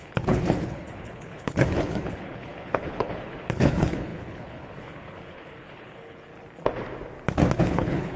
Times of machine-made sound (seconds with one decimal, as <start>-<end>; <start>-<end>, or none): 0.0-6.3; 7.6-8.2